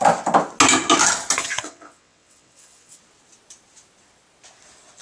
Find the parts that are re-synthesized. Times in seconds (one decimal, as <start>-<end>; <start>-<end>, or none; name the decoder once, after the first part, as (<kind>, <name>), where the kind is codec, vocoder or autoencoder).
1.4-3.0 (vocoder, WaveNeXt)